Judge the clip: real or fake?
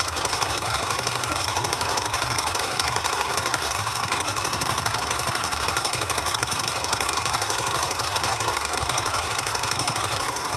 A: fake